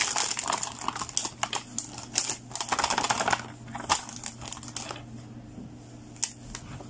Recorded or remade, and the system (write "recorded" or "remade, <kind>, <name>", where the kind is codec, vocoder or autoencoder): recorded